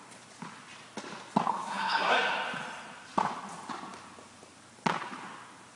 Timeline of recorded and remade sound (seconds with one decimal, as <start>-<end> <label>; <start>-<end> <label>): 0.0-1.5 recorded; 1.5-2.1 remade; 2.1-5.8 recorded